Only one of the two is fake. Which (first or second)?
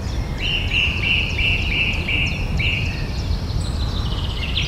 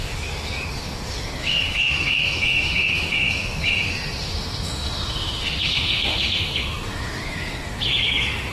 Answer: second